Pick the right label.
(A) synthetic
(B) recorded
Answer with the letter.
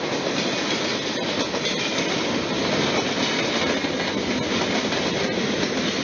B